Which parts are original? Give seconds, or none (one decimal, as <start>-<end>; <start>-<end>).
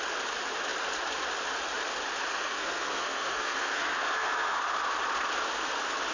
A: 0.0-2.3; 4.6-6.1